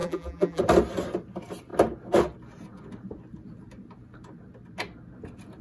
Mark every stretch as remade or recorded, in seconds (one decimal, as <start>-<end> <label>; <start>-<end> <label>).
0.0-0.6 remade; 0.6-5.6 recorded